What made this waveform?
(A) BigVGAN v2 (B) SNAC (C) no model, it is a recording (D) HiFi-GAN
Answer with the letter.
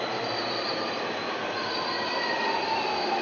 C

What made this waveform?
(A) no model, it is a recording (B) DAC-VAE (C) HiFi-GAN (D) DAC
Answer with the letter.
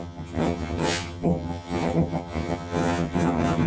C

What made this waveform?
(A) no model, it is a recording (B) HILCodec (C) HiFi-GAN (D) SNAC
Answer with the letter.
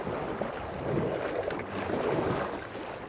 A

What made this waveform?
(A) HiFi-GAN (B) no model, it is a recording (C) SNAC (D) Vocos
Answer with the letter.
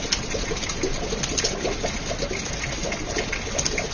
B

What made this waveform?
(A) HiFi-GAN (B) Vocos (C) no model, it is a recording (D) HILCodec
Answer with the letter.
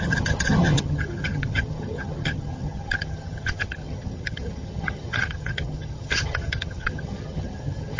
A